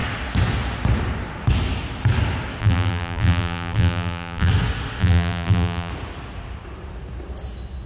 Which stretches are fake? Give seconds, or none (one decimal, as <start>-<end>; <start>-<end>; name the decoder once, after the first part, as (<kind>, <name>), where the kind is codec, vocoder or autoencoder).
2.6-4.5 (vocoder, BigVGAN v2); 5.0-5.9